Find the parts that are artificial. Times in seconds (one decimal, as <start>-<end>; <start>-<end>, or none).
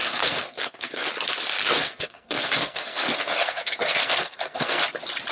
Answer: 0.0-1.1; 1.6-4.8